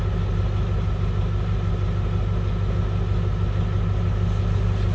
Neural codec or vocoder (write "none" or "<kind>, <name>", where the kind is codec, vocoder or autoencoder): none